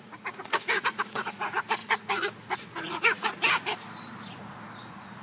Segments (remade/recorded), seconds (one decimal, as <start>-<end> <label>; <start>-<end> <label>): 0.0-3.4 remade; 3.4-4.3 recorded; 4.3-5.2 remade